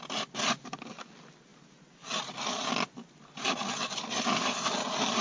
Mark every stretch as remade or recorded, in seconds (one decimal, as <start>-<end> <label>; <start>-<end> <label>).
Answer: 0.0-5.2 recorded